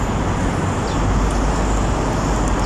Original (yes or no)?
yes